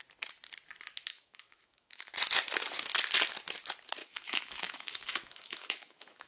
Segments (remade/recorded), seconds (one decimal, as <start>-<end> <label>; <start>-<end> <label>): 0.0-1.1 recorded; 1.1-2.1 remade; 2.1-4.0 recorded; 4.0-6.3 remade